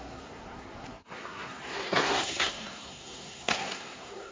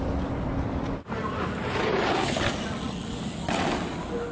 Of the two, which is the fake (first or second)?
first